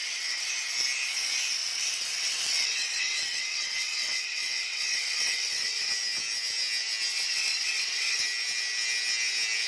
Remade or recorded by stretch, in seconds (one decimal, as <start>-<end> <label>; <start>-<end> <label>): 0.0-0.5 remade; 0.5-1.6 recorded; 1.6-5.9 remade; 5.9-7.1 recorded; 7.1-8.2 remade; 8.2-9.7 recorded